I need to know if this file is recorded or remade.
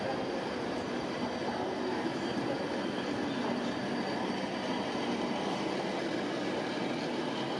recorded